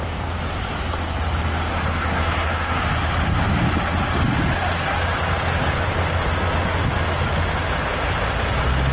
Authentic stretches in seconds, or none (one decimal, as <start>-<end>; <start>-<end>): 0.0-1.7; 2.8-8.9